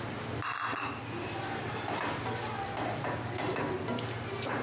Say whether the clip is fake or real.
real